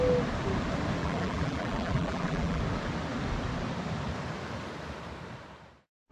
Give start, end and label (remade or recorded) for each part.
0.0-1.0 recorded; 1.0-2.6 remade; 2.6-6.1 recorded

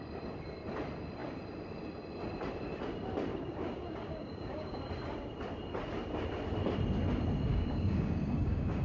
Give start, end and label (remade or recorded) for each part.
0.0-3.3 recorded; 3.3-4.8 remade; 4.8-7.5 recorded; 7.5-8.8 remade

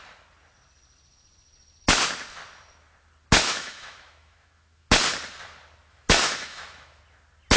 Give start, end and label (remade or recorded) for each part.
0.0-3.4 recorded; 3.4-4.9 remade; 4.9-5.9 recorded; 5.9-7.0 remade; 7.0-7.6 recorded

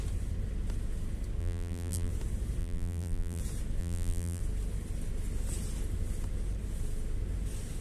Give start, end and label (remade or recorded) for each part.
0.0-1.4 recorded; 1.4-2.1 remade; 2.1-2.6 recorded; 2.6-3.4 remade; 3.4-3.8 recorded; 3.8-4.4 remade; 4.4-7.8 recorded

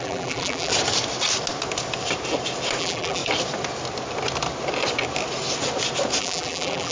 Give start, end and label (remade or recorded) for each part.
0.0-0.7 remade; 0.7-2.8 recorded; 2.8-3.2 remade; 3.2-6.2 recorded; 6.2-6.9 remade

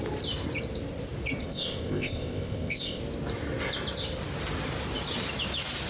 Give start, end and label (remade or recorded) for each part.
0.0-1.4 recorded; 1.4-3.0 remade; 3.0-5.9 recorded